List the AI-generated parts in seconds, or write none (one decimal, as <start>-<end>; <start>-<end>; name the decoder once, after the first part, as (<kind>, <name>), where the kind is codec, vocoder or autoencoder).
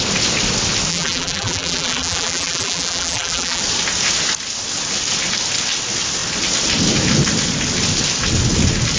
0.9-3.6 (vocoder, BigVGAN v2)